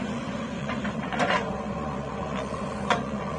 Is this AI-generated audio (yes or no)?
yes